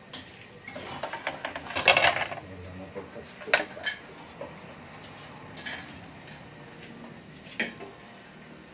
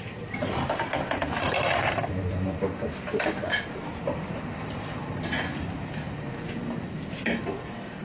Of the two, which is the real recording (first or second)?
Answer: first